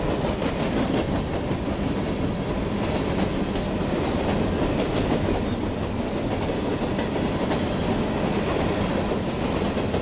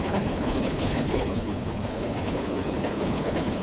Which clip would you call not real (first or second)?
second